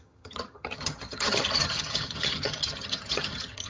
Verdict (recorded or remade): remade